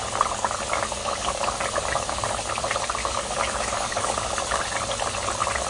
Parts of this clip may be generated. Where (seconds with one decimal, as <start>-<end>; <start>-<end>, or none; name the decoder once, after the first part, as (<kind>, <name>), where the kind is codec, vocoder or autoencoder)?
1.0-1.5 (codec, DAC); 3.0-4.6